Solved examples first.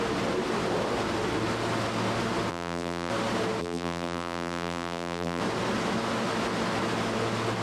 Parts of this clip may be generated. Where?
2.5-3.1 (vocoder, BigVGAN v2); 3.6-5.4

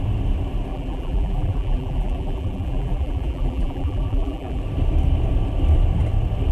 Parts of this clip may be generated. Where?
0.7-4.6 (vocoder, BigVGAN v2)